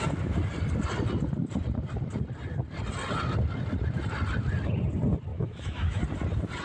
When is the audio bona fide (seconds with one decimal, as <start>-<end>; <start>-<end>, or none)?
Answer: 0.0-5.3; 6.0-6.6